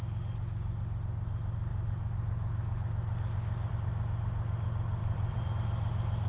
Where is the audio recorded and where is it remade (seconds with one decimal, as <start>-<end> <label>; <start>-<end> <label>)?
0.0-5.0 recorded; 5.0-5.5 remade; 5.5-6.3 recorded